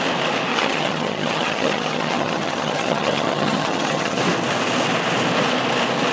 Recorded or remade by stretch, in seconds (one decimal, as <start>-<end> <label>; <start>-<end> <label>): 0.0-0.5 recorded; 0.5-4.2 remade; 4.2-6.1 recorded